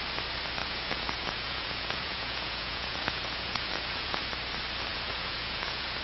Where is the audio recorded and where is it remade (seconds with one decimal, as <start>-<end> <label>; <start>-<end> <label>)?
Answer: 0.0-0.6 recorded; 0.6-4.2 remade; 4.2-4.9 recorded; 4.9-6.0 remade